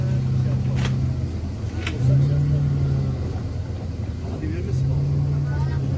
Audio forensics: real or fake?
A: real